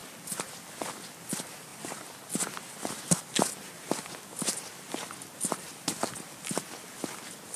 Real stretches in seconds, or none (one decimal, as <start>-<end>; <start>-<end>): 0.0-7.6